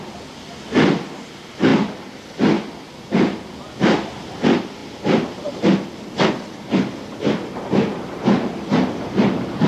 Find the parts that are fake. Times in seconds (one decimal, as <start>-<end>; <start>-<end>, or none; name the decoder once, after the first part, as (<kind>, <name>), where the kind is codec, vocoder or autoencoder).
none